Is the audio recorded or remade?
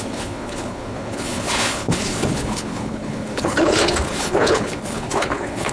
remade